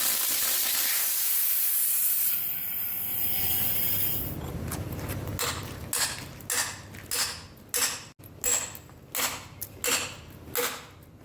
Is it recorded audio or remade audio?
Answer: recorded